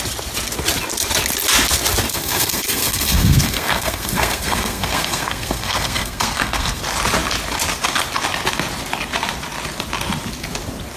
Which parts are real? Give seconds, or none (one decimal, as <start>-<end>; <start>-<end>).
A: 0.0-2.1; 6.8-11.0